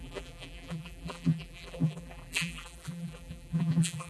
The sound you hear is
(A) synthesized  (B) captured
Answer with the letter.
A